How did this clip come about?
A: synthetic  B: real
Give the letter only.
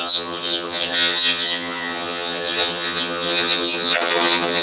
A